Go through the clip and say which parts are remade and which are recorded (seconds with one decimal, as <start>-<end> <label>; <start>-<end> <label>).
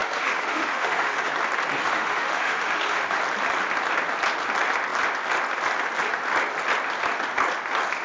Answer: 0.0-1.3 remade; 1.3-1.8 recorded; 1.8-3.2 remade; 3.2-8.0 recorded